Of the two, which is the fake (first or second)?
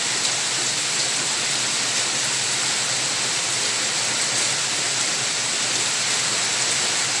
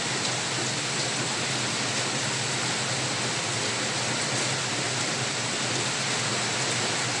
first